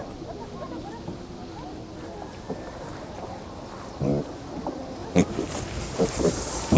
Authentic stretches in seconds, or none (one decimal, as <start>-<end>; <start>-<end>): 0.0-6.8